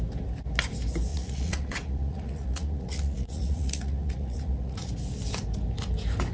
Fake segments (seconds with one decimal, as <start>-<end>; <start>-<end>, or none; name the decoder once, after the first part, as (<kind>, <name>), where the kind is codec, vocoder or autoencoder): 1.1-4.9 (vocoder, Vocos)